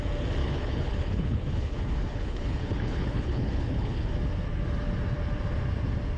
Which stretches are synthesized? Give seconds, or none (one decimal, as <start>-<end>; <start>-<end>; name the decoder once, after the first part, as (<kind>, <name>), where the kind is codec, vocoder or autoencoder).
0.4-4.1 (codec, HILCodec)